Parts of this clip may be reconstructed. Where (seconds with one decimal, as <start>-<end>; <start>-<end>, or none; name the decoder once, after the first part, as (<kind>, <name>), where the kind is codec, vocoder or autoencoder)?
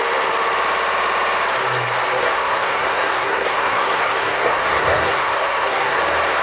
2.2-6.0 (codec, SNAC)